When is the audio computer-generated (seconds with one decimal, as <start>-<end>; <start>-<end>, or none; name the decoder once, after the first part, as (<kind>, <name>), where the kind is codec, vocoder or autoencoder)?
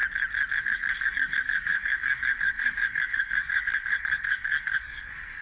0.6-5.4 (codec, SNAC)